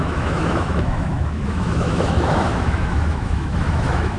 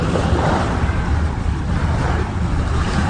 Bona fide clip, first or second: second